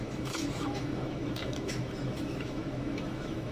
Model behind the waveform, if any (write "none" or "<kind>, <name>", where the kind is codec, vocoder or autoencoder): autoencoder, DAC-VAE